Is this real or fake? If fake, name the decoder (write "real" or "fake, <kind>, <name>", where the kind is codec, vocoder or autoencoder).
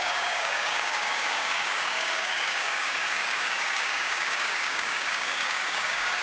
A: fake, codec, DAC